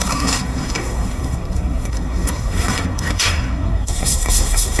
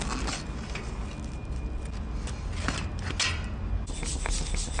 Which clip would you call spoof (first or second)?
first